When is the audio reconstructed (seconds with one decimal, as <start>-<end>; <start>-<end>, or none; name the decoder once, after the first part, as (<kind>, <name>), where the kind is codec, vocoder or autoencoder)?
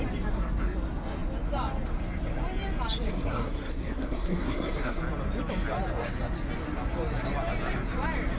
3.1-5.0 (codec, SNAC)